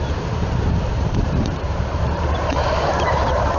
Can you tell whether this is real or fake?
fake